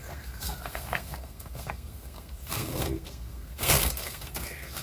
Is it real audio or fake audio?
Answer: fake